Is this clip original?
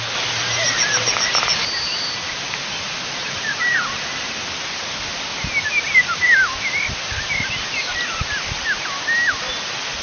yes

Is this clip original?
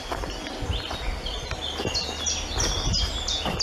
yes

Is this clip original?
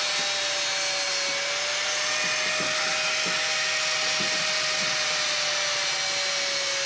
yes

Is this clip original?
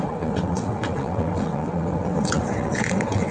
no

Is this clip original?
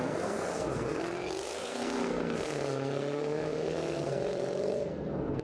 no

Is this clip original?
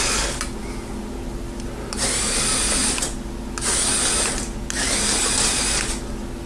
yes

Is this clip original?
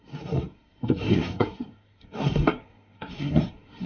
no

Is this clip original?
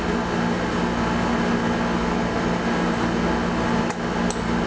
yes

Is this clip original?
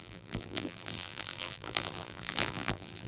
no